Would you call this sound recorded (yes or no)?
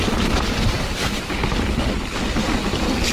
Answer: yes